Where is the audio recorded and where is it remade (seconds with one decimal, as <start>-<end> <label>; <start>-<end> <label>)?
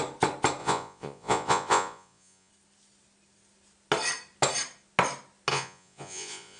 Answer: 0.0-0.6 recorded; 0.6-2.5 remade; 2.5-5.5 recorded; 5.5-6.6 remade